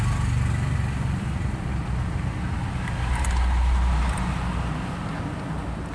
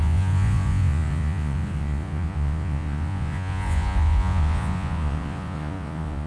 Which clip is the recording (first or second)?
first